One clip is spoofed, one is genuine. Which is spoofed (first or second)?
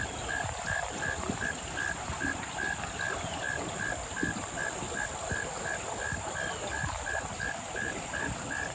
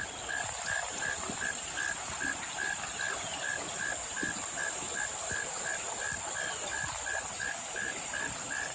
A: first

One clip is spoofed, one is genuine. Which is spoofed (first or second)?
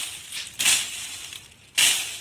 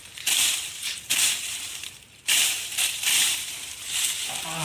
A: second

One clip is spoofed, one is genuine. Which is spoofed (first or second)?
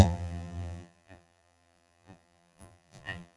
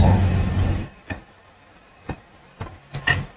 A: first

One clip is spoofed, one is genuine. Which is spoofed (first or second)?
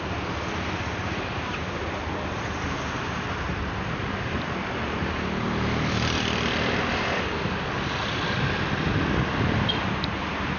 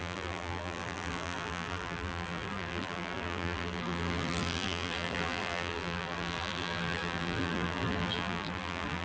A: second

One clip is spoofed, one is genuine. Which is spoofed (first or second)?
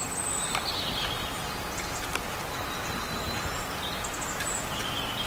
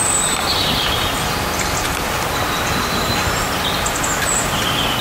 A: second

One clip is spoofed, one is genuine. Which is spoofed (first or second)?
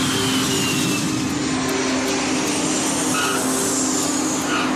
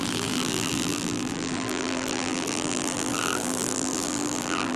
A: second